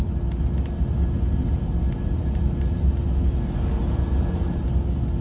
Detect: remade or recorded recorded